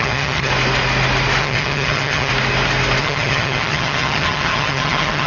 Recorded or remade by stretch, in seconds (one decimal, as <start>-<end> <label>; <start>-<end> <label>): 0.0-0.5 remade; 0.5-1.4 recorded; 1.4-2.3 remade; 2.3-3.0 recorded; 3.0-5.3 remade